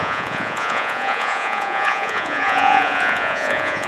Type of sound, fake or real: fake